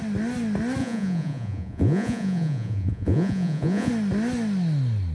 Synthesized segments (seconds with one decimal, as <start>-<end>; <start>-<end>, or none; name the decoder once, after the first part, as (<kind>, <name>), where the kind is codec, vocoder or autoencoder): 0.8-3.9 (vocoder, Vocos)